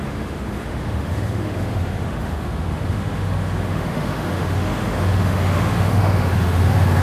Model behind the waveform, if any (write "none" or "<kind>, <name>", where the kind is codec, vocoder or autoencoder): autoencoder, DAC-VAE